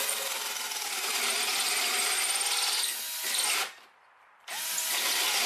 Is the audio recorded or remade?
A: recorded